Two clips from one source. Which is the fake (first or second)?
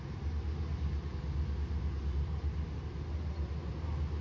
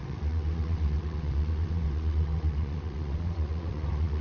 second